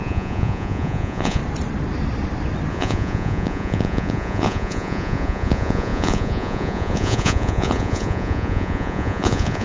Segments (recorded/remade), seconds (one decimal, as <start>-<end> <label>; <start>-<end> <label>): 0.0-1.4 remade; 1.4-2.7 recorded; 2.7-9.6 remade